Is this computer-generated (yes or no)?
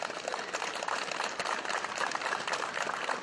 yes